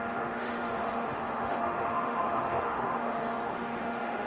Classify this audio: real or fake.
fake